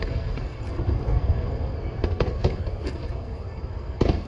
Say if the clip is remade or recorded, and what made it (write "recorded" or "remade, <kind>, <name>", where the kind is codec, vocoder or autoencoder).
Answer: remade, codec, SNAC